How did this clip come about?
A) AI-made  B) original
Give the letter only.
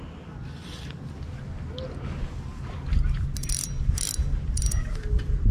B